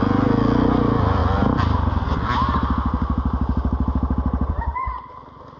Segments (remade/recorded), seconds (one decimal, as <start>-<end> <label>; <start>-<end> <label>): 0.0-5.6 recorded